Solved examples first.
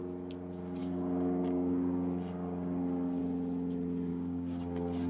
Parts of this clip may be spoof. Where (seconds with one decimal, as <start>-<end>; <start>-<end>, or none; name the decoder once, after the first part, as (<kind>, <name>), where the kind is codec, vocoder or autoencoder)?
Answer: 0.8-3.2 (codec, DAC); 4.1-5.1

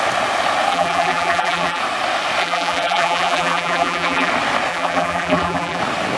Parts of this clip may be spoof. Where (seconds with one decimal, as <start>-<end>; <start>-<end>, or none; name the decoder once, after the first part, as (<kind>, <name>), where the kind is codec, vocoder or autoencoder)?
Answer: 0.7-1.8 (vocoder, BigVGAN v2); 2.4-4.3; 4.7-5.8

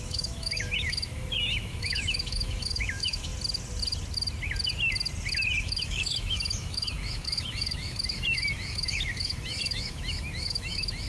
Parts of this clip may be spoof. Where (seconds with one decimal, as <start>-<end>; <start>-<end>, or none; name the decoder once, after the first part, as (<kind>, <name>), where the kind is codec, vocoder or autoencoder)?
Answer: 0.0-3.3 (autoencoder, DAC-VAE); 5.6-11.1

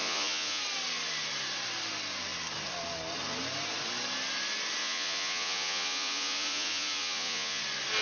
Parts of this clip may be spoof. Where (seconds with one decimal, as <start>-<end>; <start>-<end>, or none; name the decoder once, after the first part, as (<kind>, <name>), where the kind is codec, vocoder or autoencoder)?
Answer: 0.0-0.6 (vocoder, Vocos); 4.8-7.6

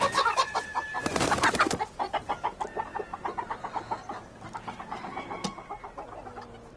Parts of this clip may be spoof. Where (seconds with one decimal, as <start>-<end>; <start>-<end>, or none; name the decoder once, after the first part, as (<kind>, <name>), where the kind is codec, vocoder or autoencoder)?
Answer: 3.1-3.7 (vocoder, BigVGAN v2)

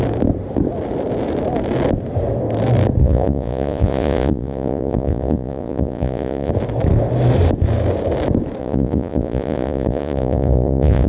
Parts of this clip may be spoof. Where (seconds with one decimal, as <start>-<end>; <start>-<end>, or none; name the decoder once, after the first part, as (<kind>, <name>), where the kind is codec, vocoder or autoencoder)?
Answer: 3.0-6.5 (vocoder, Vocos); 8.6-11.1

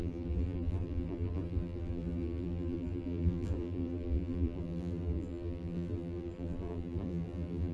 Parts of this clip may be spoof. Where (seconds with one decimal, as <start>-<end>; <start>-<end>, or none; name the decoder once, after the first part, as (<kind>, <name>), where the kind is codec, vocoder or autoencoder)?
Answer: 0.0-7.7 (vocoder, BigVGAN v2)